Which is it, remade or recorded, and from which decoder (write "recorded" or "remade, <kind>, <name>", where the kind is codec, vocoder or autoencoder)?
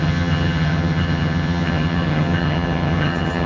remade, vocoder, HiFi-GAN